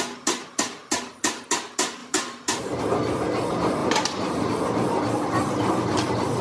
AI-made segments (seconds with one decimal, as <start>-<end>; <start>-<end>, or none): 2.0-2.8; 3.8-4.5